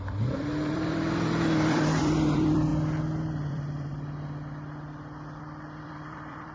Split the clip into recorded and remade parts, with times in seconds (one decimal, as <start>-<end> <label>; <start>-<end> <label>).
0.0-2.7 remade; 2.7-3.5 recorded; 3.5-3.9 remade; 3.9-5.4 recorded; 5.4-6.5 remade